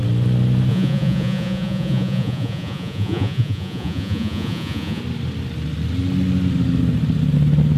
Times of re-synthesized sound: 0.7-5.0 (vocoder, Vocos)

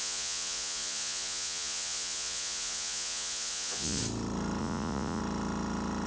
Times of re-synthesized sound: 0.0-4.0 (vocoder, Vocos); 4.6-5.2

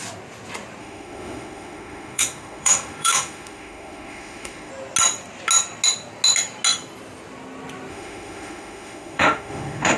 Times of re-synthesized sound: 0.8-4.7 (autoencoder, DAC-VAE); 7.9-10.0

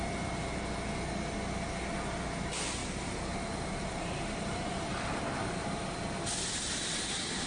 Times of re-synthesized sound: 2.8-5.8 (vocoder, BigVGAN v2)

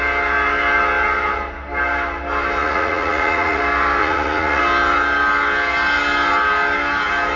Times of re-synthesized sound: 2.6-3.6 (vocoder, Vocos); 4.0-4.6

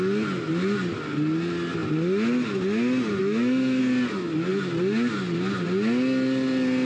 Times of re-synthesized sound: 3.2-3.8 (autoencoder, DAC-VAE)

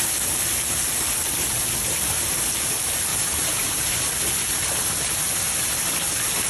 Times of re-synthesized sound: 3.1-4.0 (vocoder, BigVGAN v2)

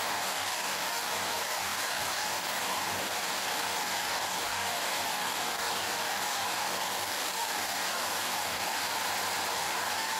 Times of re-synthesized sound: 0.0-9.0 (codec, DAC); 9.5-10.2